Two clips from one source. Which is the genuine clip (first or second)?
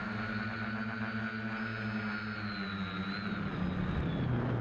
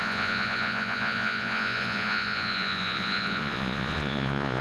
first